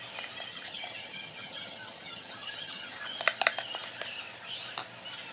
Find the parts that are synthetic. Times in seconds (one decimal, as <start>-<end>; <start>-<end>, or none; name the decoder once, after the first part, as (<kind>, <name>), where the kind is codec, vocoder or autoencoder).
0.5-3.0 (vocoder, HiFi-GAN)